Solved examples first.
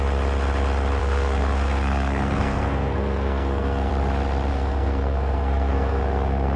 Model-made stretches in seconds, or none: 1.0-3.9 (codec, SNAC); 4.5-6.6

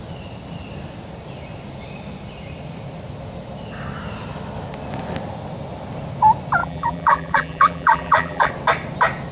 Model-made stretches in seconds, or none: 6.6-8.5 (vocoder, BigVGAN v2)

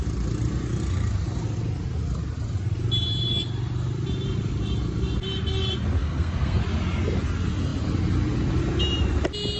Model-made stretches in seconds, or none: 6.0-6.6 (codec, SNAC)

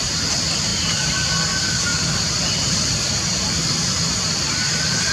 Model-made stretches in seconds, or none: none

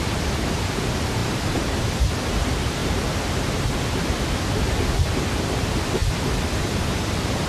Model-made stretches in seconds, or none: 1.2-2.0 (vocoder, BigVGAN v2); 2.8-3.7